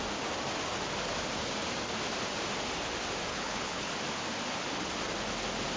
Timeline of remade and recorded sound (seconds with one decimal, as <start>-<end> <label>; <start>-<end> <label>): 0.0-3.3 recorded; 3.3-3.9 remade; 3.9-5.8 recorded